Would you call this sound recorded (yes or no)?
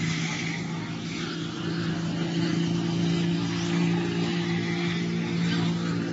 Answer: yes